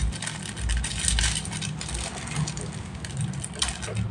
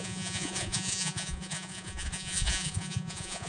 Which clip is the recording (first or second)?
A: first